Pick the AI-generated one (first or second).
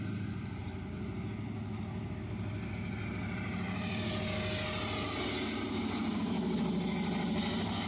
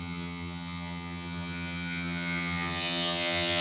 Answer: second